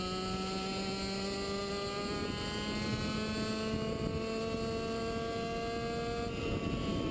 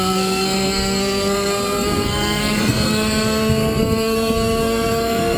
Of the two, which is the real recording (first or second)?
first